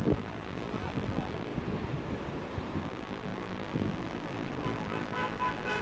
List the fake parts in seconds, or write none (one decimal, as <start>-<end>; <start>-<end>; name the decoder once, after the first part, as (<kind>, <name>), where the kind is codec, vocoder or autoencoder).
0.0-1.5 (vocoder, BigVGAN v2); 2.8-5.8